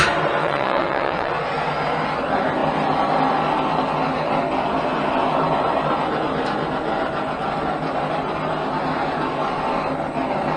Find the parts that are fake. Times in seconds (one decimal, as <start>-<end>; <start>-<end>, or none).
0.4-1.3

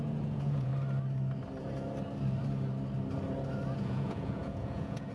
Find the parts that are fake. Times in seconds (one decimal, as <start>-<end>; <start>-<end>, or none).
0.0-0.7; 3.8-5.1

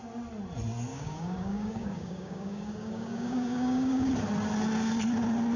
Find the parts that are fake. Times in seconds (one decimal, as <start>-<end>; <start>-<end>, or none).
0.9-4.1